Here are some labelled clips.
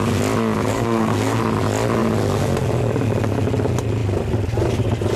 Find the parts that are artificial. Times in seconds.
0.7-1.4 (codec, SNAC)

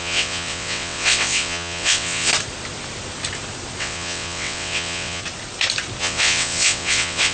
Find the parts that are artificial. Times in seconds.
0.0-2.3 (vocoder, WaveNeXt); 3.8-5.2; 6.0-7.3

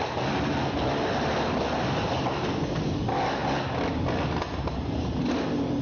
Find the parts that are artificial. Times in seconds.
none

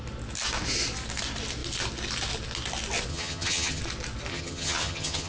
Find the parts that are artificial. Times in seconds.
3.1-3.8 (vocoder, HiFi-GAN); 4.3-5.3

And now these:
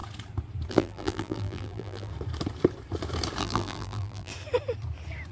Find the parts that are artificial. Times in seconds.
0.7-2.1 (vocoder, BigVGAN v2); 3.4-4.3